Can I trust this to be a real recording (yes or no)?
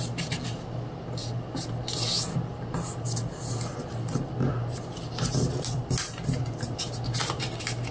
yes